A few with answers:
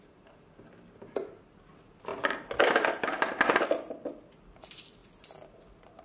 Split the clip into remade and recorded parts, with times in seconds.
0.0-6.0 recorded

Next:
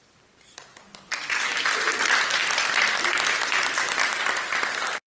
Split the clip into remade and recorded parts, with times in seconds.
0.0-1.1 remade; 1.1-1.8 recorded; 1.8-2.4 remade; 2.4-3.8 recorded; 3.8-5.1 remade

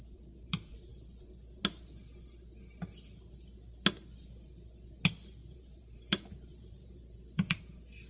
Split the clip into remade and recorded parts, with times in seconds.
0.0-5.4 recorded; 5.4-7.6 remade; 7.6-8.1 recorded

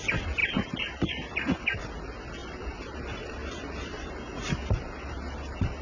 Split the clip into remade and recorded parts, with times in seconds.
0.0-0.4 recorded; 0.4-1.8 remade; 1.8-2.4 recorded; 2.4-5.8 remade

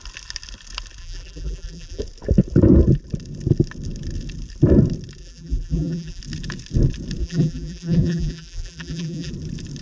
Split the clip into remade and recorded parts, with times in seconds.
0.0-1.0 recorded; 1.0-2.0 remade; 2.0-5.2 recorded; 5.2-6.2 remade; 6.2-7.2 recorded; 7.2-9.3 remade; 9.3-9.8 recorded

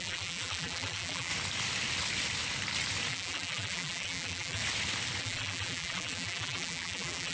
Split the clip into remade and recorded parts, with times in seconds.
0.0-1.3 remade; 1.3-3.1 recorded; 3.1-4.6 remade; 4.6-5.2 recorded; 5.2-7.3 remade

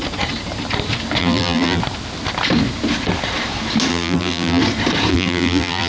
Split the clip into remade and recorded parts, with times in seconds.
0.0-1.2 recorded; 1.2-1.8 remade; 1.8-3.9 recorded; 3.9-4.6 remade; 4.6-5.1 recorded; 5.1-5.9 remade